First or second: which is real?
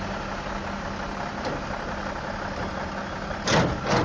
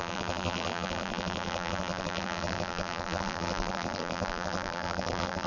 first